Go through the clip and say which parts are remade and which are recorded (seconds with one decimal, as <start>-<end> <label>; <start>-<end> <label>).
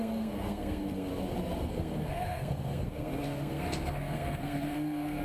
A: 0.0-1.1 remade; 1.1-1.6 recorded; 1.6-5.2 remade